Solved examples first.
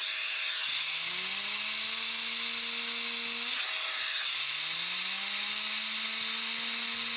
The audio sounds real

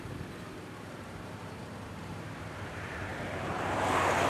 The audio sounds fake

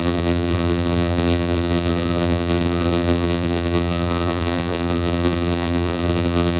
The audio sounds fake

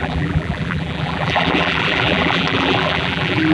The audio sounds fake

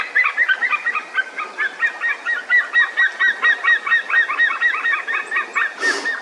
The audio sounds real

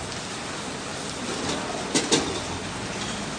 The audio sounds real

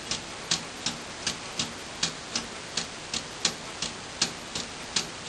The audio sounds real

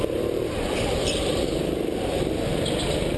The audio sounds fake